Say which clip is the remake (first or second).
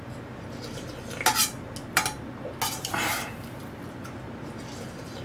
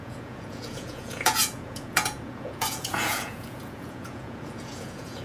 second